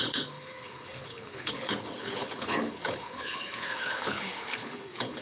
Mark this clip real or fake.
fake